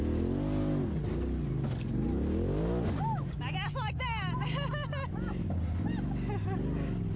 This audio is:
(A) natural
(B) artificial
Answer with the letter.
A